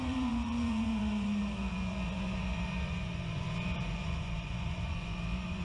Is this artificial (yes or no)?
yes